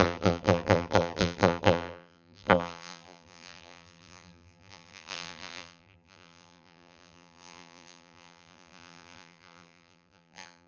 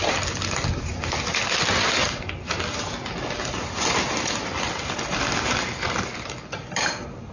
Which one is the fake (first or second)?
first